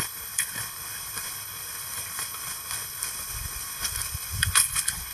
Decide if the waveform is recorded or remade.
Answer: remade